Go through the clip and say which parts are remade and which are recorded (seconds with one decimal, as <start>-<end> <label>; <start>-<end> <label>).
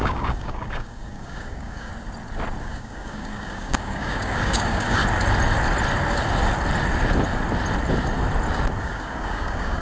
0.0-1.9 remade; 1.9-2.6 recorded; 2.6-5.0 remade; 5.0-8.8 recorded; 8.8-9.8 remade